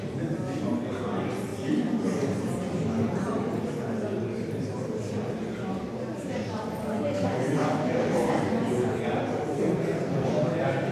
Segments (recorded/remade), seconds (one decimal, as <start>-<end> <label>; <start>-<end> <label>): 0.0-6.8 recorded; 6.8-8.3 remade; 8.3-9.5 recorded; 9.5-10.3 remade; 10.3-10.9 recorded